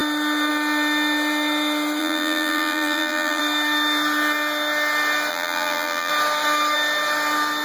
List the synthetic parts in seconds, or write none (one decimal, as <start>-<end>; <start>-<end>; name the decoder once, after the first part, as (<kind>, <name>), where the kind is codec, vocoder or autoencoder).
2.0-3.4 (vocoder, BigVGAN v2); 5.3-6.1